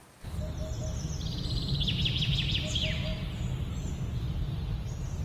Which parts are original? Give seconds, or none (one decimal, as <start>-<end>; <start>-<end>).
0.0-5.2